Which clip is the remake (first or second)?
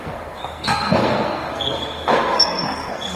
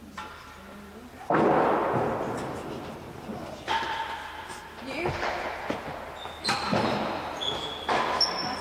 first